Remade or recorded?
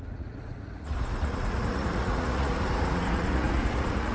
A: remade